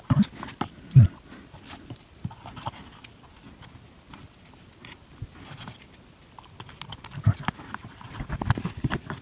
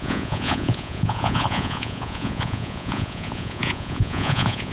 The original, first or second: first